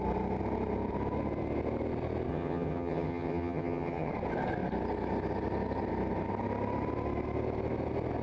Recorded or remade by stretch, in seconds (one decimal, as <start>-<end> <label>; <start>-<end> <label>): 0.0-2.3 recorded; 2.3-4.1 remade; 4.1-8.2 recorded